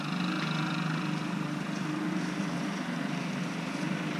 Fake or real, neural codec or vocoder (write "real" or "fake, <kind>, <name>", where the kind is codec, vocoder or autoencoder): real